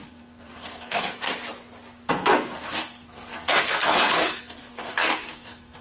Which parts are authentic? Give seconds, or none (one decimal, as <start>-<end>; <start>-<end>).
1.3-2.1